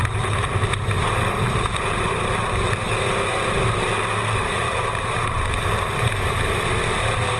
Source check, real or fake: fake